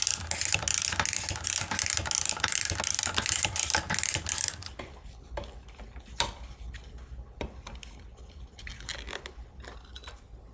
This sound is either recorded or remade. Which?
recorded